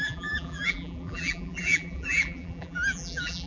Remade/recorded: remade